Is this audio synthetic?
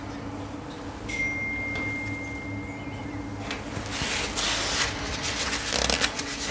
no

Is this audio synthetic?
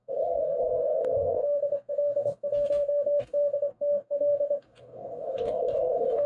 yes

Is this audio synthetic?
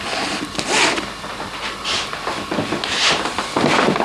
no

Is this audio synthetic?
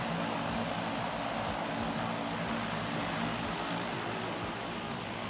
no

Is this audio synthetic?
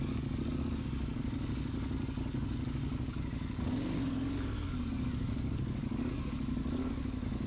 yes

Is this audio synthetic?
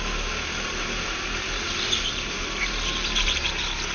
no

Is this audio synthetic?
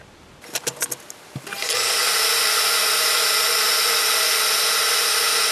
no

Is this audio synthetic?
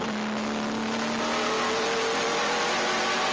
no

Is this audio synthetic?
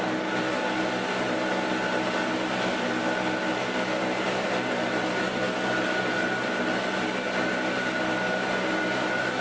no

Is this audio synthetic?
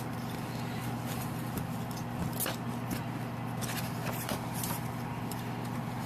yes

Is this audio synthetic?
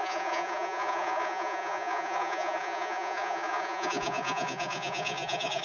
yes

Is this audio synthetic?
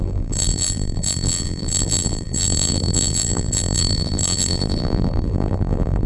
yes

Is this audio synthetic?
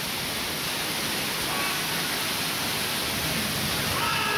no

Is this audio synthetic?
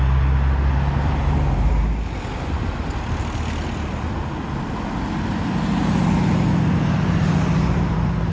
no